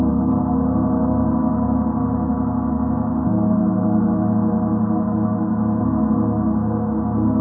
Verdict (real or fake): real